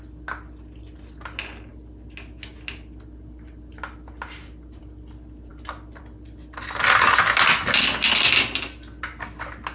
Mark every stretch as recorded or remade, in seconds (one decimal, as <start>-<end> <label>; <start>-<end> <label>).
0.0-9.7 recorded